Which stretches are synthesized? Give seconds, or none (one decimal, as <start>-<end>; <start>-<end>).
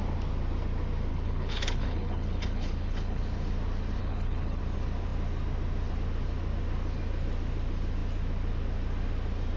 1.1-3.2; 4.0-4.6